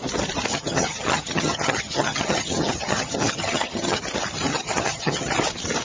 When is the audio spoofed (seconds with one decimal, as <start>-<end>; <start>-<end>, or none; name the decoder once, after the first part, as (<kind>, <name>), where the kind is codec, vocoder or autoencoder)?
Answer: 0.5-4.0 (vocoder, HiFi-GAN); 4.5-5.3

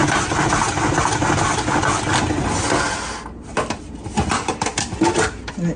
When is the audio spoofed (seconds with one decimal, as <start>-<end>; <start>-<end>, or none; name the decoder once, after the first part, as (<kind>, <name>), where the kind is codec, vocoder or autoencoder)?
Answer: none

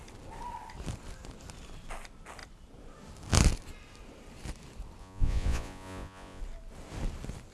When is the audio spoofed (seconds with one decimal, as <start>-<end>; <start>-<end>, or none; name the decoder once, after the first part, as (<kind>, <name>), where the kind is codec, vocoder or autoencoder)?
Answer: 5.0-6.4 (vocoder, Vocos)

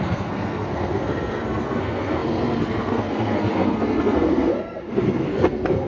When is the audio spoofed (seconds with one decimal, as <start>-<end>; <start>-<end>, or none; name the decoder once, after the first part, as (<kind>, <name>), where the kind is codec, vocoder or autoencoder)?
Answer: 0.0-5.9 (codec, SNAC)

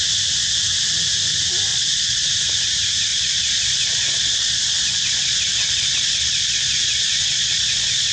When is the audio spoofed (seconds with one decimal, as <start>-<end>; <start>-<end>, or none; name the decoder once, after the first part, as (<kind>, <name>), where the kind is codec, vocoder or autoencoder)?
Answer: 1.7-2.3 (vocoder, Vocos); 3.1-8.1

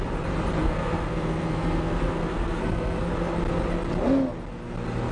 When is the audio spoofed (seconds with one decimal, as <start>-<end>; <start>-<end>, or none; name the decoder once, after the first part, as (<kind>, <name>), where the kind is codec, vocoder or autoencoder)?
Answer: 0.6-3.1 (codec, SNAC)

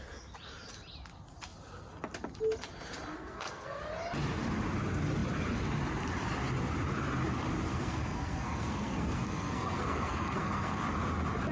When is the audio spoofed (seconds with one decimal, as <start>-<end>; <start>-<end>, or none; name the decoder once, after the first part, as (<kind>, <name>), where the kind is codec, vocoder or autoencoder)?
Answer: 3.1-3.8 (codec, SNAC); 7.7-10.8

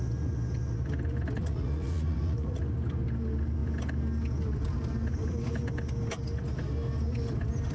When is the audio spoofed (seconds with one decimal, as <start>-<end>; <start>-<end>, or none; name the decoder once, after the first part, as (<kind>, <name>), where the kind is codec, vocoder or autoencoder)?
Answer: 1.4-2.6 (vocoder, Vocos)